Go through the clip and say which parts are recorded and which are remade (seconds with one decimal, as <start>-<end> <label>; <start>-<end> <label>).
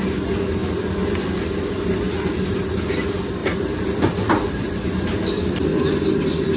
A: 0.0-3.4 recorded; 3.4-5.8 remade; 5.8-6.6 recorded